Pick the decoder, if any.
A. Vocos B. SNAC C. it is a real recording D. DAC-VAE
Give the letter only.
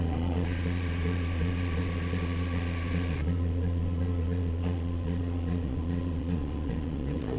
A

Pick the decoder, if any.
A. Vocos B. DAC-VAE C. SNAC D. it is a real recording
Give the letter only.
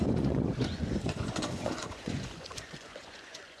A